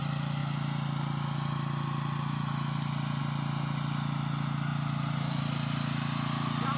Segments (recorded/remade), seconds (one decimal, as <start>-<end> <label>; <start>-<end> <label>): 0.0-4.7 recorded; 4.7-5.4 remade; 5.4-6.8 recorded